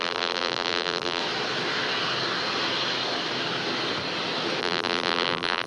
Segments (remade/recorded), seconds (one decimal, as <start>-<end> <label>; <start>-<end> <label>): 0.0-1.2 remade; 1.2-4.6 recorded; 4.6-5.7 remade